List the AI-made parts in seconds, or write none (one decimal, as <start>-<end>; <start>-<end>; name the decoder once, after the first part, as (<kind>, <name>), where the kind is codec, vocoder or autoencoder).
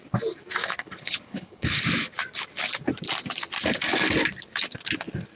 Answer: 0.6-1.8 (codec, HILCodec)